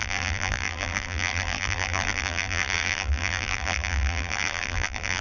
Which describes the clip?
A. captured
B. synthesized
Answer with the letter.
B